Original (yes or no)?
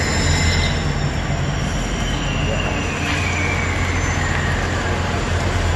yes